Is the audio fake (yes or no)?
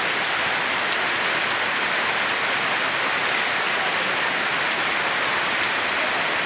no